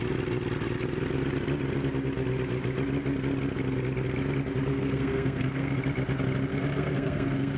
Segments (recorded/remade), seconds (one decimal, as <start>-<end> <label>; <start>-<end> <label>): 0.0-4.7 recorded; 4.7-5.8 remade; 5.8-6.5 recorded; 6.5-7.6 remade